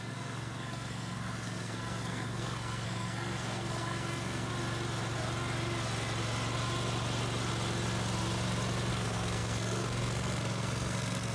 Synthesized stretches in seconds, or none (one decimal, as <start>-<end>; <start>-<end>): 0.0-4.5; 8.9-11.3

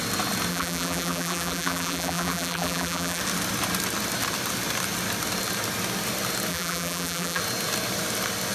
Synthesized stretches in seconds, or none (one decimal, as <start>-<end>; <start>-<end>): 0.5-3.2; 6.5-7.4

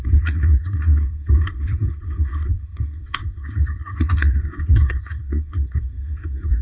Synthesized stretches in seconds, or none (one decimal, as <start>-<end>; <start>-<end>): 0.0-6.6

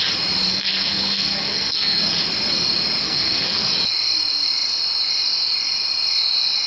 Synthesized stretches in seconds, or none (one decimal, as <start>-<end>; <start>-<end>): 0.5-2.0; 3.0-3.7

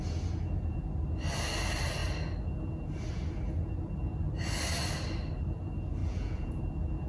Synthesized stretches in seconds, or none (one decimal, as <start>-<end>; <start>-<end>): 6.0-6.6

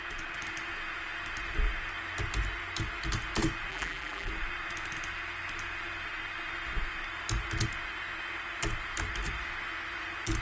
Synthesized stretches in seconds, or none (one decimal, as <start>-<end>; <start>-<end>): 3.7-4.3

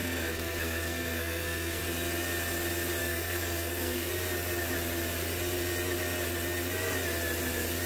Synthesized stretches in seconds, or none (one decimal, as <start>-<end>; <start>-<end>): 0.0-1.8; 3.0-4.1

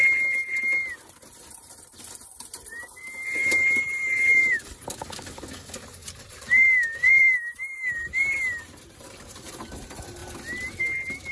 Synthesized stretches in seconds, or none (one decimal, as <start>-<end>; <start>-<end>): 3.4-4.7; 6.0-9.2